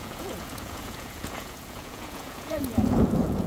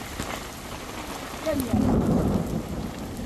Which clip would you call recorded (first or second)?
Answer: second